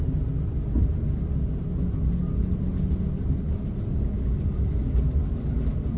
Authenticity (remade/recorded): recorded